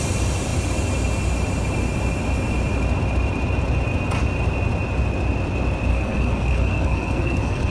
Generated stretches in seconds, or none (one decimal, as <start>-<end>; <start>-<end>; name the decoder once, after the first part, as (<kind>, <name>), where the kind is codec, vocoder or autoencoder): 5.9-7.7 (codec, SNAC)